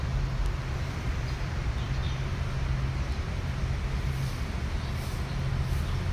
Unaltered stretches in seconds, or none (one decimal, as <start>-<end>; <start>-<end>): 0.0-6.1